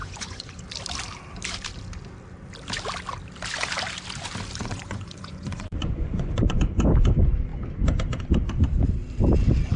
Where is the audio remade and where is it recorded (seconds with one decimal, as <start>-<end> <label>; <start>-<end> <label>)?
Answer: 0.0-0.6 remade; 0.6-4.6 recorded; 4.6-6.6 remade; 6.6-9.8 recorded